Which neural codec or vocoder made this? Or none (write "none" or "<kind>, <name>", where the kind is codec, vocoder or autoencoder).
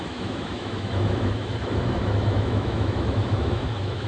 autoencoder, DAC-VAE